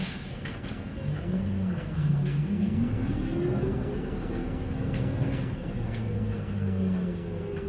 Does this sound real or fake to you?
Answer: fake